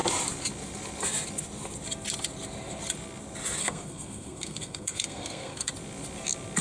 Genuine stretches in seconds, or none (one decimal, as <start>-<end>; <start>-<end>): 0.0-3.6; 5.7-6.6

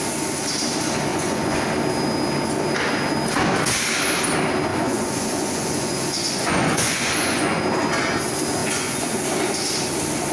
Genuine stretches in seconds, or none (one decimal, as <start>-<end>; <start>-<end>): 0.0-1.1; 1.6-4.7; 7.6-8.6; 9.2-10.3

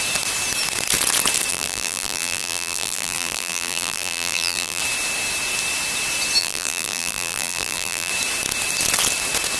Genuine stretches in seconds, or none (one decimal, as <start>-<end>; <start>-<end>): 0.0-1.5; 4.8-6.4; 8.1-9.6

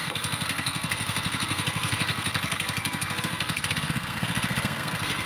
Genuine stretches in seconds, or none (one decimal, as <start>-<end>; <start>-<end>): none

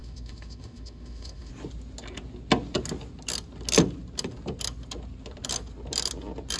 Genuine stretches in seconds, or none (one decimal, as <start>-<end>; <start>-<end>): 1.5-6.6

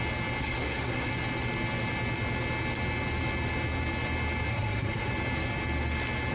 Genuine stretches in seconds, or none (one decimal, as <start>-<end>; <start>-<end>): 0.0-0.4; 1.1-4.5; 5.1-6.3